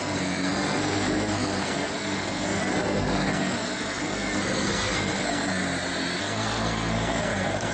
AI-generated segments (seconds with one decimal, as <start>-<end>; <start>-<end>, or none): 0.0-5.6; 6.2-7.7